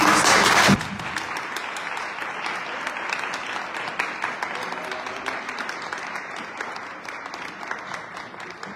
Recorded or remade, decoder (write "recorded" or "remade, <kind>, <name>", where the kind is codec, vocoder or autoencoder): recorded